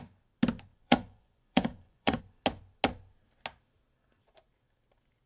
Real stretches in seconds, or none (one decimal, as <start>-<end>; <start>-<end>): 0.0-0.7; 2.2-5.3